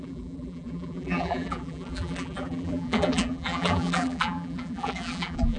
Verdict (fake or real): fake